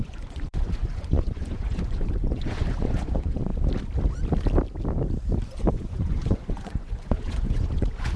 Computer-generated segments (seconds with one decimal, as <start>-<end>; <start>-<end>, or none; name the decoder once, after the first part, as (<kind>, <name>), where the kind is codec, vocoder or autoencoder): 0.0-3.5 (vocoder, Vocos); 5.7-8.2